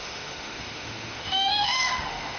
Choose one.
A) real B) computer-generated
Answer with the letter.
B